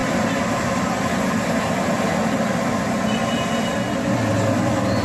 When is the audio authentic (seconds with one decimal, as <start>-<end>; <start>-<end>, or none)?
0.0-5.0